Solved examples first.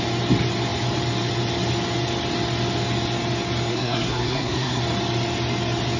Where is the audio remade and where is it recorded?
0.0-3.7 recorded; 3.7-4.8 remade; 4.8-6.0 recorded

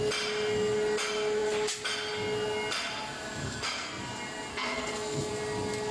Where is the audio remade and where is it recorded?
0.0-3.4 recorded; 3.4-4.0 remade; 4.0-4.5 recorded; 4.5-5.3 remade; 5.3-5.9 recorded

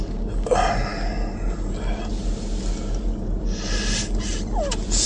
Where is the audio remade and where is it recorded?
0.0-5.1 recorded

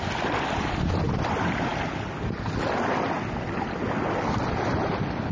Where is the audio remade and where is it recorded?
0.0-5.3 recorded